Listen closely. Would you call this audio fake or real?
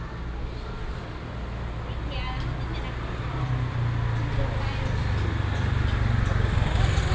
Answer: real